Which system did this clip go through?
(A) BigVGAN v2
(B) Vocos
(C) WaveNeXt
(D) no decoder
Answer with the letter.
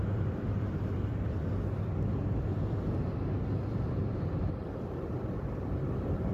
A